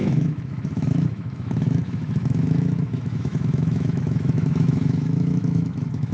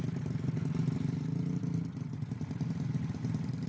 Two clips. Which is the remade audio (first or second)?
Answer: first